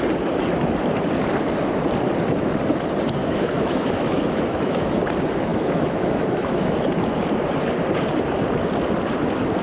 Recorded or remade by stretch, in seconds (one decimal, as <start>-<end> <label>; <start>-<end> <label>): 0.0-3.2 recorded; 3.2-5.0 remade; 5.0-5.5 recorded; 5.5-6.8 remade; 6.8-9.6 recorded